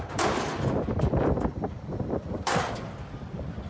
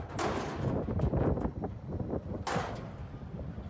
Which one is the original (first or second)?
second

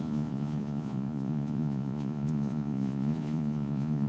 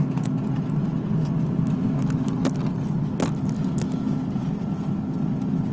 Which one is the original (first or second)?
second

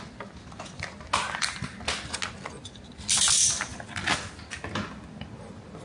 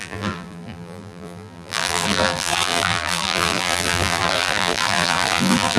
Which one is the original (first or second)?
first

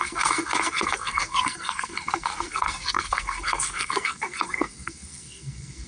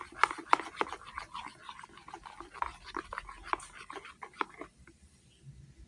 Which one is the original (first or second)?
second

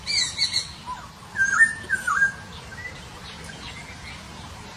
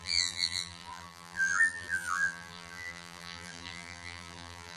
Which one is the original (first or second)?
first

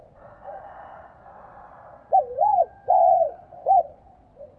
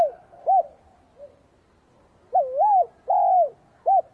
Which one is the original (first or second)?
second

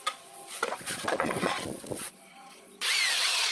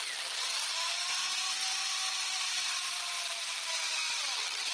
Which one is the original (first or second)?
second